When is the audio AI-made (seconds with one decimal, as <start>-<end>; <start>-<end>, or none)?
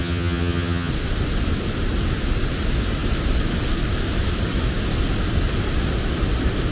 0.0-0.9